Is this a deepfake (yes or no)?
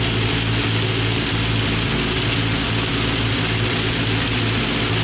no